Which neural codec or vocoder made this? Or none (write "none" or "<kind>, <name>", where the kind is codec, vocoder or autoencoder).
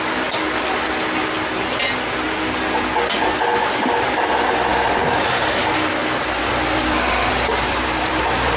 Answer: none